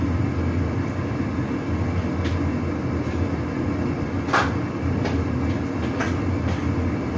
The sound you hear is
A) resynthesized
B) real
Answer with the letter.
B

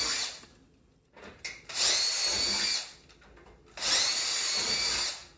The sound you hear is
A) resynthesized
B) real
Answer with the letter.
B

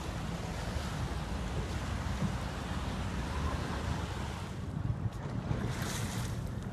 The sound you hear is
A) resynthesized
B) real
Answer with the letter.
B